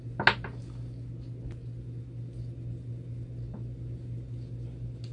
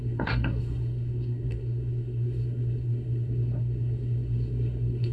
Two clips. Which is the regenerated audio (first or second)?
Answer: second